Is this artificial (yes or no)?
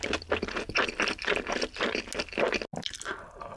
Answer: no